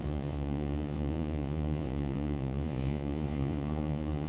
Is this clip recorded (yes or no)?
no